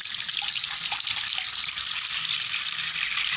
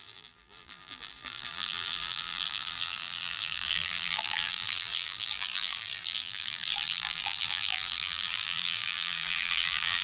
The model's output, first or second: second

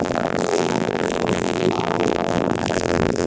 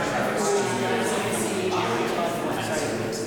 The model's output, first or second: first